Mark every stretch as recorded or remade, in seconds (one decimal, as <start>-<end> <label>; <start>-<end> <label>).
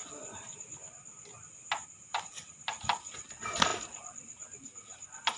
0.0-5.4 recorded